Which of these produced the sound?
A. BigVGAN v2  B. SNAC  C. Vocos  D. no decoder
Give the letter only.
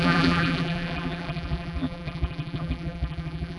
A